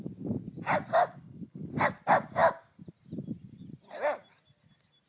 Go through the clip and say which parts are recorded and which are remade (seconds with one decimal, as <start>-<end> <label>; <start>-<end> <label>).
0.0-1.0 recorded; 1.0-1.7 remade; 1.7-5.1 recorded